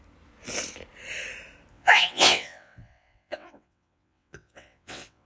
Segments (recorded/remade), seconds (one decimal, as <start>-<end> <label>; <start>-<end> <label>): 0.0-1.7 recorded; 1.7-5.3 remade